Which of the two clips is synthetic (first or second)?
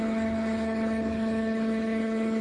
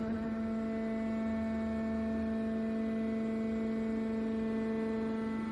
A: first